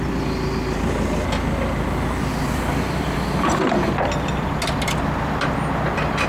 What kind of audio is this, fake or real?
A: real